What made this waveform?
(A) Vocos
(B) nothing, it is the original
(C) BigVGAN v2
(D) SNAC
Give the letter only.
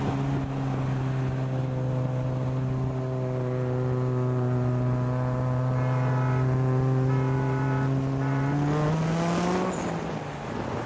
B